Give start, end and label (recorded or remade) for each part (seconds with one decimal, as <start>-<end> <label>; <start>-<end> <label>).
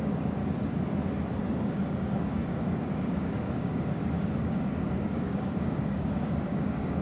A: 0.0-0.4 remade; 0.4-1.3 recorded; 1.3-7.0 remade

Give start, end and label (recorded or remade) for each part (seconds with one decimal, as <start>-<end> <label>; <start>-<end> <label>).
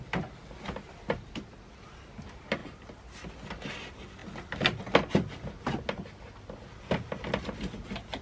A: 0.0-8.2 recorded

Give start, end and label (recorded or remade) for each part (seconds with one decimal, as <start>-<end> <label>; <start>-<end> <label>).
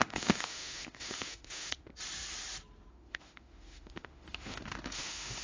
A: 0.0-1.9 remade; 1.9-2.9 recorded; 2.9-5.4 remade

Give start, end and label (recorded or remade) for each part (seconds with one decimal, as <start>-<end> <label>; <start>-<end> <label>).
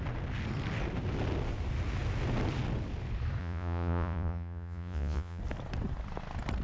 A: 0.0-3.4 recorded; 3.4-5.4 remade; 5.4-6.6 recorded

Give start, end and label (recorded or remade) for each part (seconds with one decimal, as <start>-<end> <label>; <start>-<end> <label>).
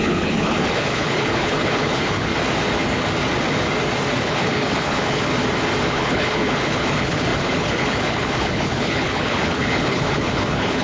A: 0.0-2.3 remade; 2.3-4.2 recorded; 4.2-5.3 remade; 5.3-5.9 recorded; 5.9-10.8 remade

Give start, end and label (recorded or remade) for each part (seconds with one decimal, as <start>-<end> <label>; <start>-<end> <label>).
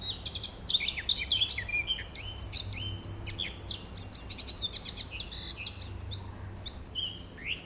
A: 0.0-7.7 recorded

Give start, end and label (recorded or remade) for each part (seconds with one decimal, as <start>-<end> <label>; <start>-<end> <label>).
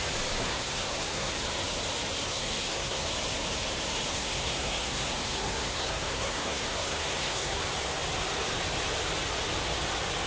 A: 0.0-0.4 recorded; 0.4-1.3 remade; 1.3-2.3 recorded; 2.3-3.1 remade; 3.1-4.1 recorded; 4.1-7.6 remade; 7.6-10.3 recorded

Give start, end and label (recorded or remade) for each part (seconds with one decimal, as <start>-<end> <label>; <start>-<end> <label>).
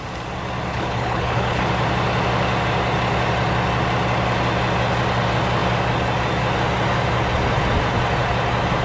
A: 0.0-0.7 recorded; 0.7-1.6 remade; 1.6-8.8 recorded